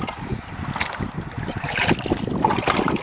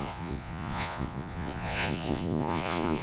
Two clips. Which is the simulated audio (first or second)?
second